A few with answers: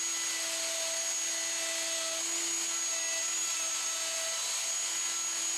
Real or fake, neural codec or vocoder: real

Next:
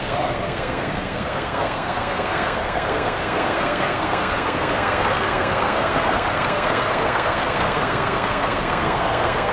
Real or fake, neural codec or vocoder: fake, codec, SNAC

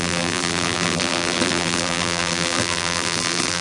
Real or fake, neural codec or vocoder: fake, vocoder, BigVGAN v2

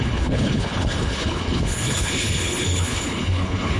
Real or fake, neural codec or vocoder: fake, codec, HILCodec